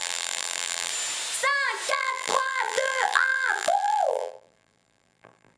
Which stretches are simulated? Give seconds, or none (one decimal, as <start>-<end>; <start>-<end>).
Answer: 0.0-0.9; 1.9-5.6